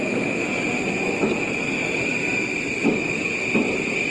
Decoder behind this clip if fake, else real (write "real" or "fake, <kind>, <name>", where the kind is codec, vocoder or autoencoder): real